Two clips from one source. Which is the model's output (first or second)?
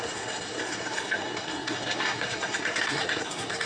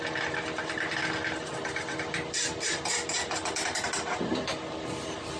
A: first